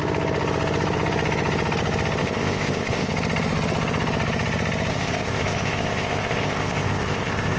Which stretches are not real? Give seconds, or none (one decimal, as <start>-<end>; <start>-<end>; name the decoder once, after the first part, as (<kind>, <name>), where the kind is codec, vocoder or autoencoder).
2.2-3.1 (codec, ZipCodec); 4.9-7.6